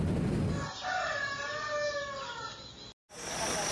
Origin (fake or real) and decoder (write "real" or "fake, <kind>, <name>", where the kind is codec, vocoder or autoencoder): real